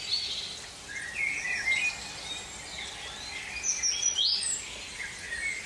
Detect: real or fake real